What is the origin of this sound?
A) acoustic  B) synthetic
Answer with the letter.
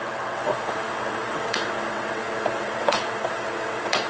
B